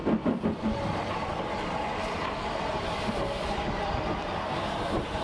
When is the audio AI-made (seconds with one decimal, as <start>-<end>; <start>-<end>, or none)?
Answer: none

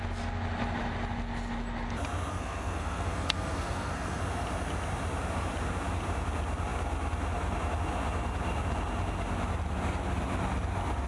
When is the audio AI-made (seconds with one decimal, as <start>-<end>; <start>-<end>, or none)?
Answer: 2.3-4.2

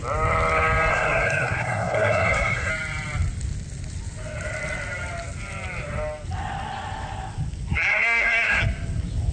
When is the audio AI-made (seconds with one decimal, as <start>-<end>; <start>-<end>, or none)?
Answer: 0.9-2.7; 7.9-8.6

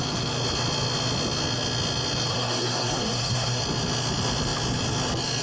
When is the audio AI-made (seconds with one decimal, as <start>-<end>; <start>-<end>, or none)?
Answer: 2.3-3.6

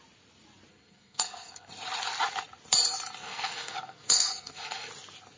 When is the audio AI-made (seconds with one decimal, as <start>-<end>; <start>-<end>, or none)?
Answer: 0.7-1.7; 3.2-4.9

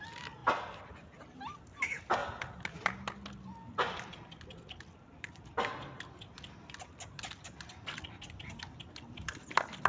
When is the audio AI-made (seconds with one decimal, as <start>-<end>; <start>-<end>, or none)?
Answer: none

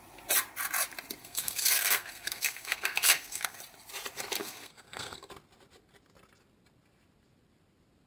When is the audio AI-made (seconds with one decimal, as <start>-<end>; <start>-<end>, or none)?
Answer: 1.2-3.6; 4.4-5.3